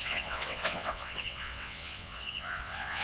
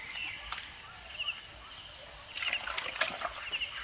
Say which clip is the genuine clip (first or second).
second